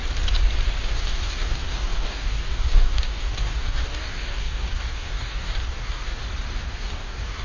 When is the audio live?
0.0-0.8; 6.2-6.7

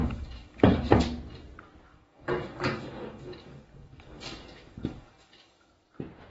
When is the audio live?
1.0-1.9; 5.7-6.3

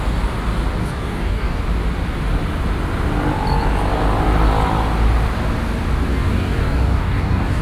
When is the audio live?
0.0-0.8; 1.6-6.1

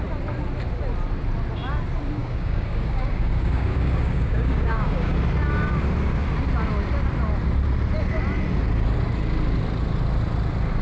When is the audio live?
0.0-2.2; 5.1-10.8

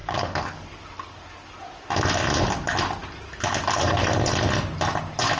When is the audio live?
0.8-5.4